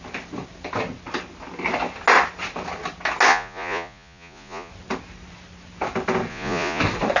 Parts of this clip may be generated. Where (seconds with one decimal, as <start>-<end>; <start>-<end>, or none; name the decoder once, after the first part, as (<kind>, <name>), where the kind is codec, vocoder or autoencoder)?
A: 3.3-4.7 (vocoder, Vocos); 6.3-6.8